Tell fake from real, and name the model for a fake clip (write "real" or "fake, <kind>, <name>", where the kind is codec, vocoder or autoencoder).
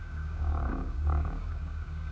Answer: fake, codec, DAC